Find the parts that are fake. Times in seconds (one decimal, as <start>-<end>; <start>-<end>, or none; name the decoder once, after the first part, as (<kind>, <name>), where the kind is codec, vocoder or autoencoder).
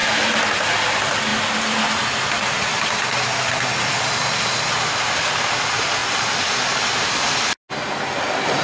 none